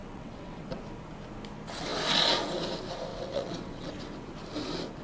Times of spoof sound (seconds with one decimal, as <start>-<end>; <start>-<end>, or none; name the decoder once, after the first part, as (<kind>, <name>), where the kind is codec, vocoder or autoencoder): 0.0-0.8 (vocoder, WaveNeXt); 3.1-3.9

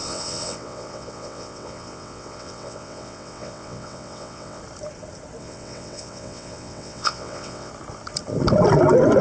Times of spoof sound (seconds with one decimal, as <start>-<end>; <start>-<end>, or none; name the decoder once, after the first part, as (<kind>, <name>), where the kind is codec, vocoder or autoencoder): 0.0-4.6 (vocoder, WaveNeXt); 5.4-7.7